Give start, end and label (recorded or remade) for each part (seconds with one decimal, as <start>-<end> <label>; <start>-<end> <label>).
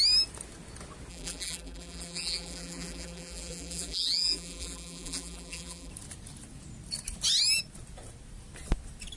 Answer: 0.0-1.1 recorded; 1.1-5.9 remade; 5.9-9.2 recorded